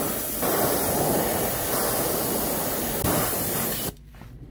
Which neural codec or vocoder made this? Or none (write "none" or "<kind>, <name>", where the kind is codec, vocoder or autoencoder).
none